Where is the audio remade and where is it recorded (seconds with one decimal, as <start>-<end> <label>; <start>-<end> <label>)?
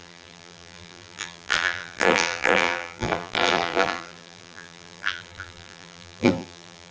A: 0.0-6.9 remade